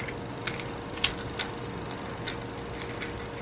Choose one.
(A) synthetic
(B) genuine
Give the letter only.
B